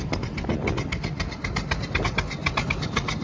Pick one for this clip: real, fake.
real